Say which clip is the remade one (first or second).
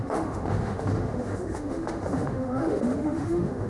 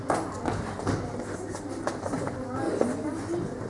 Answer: first